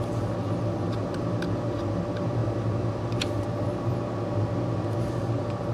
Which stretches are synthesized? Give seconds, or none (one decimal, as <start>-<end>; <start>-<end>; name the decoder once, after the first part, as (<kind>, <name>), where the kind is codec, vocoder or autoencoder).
none

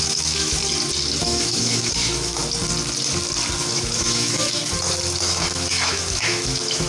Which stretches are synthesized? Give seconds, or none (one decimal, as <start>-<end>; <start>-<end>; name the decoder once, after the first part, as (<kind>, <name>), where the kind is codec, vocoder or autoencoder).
0.0-0.6 (autoencoder, DAC-VAE); 1.2-2.4; 3.6-4.6; 5.2-6.9

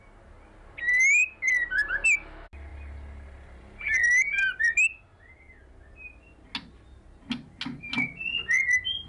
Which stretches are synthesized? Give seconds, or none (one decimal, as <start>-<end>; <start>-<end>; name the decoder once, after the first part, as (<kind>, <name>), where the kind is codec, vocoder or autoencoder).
1.2-1.9 (vocoder, BigVGAN v2)